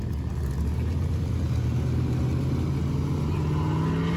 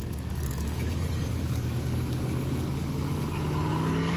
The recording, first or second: first